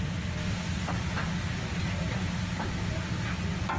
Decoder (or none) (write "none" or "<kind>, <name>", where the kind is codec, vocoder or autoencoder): none